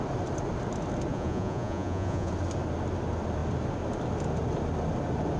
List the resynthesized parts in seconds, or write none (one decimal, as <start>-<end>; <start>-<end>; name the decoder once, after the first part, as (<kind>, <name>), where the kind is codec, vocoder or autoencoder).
1.1-2.3 (vocoder, Vocos)